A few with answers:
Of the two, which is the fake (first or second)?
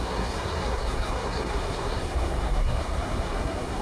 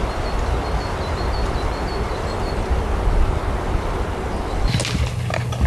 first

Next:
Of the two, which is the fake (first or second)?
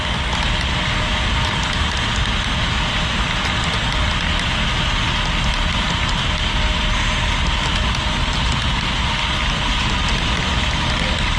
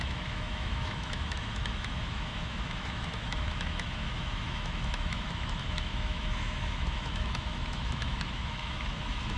second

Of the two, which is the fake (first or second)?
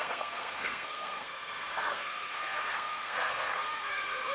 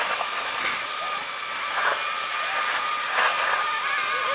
first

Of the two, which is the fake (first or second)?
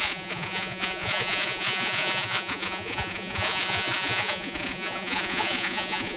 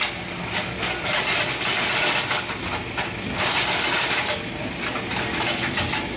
first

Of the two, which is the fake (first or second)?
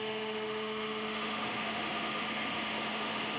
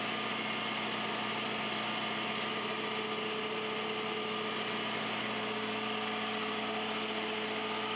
first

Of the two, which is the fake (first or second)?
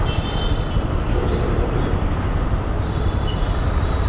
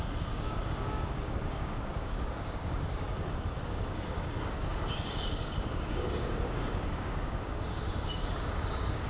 second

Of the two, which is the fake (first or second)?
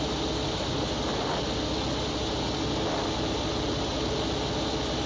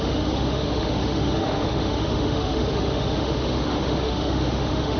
second